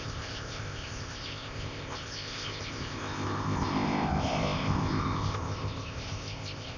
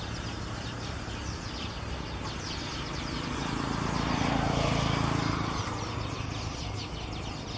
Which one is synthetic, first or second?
first